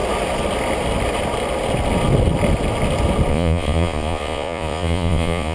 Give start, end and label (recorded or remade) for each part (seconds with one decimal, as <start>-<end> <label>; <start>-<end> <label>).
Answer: 0.0-3.3 recorded; 3.3-5.5 remade